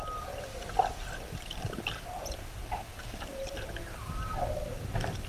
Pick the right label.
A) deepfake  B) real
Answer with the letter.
B